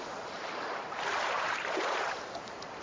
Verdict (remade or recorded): remade